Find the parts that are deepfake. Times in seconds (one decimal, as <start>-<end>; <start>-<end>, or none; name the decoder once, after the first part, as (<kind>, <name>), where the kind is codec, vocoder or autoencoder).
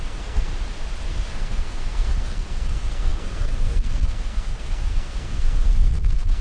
0.0-0.5 (codec, SNAC); 1.1-6.4